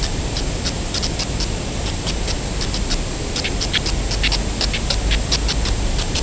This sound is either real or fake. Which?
real